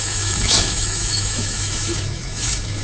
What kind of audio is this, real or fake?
fake